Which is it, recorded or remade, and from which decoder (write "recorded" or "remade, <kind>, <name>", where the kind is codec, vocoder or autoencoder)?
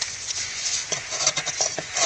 remade, vocoder, Vocos